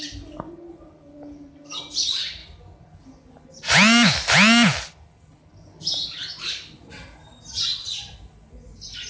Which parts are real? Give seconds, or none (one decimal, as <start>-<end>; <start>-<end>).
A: 0.0-9.1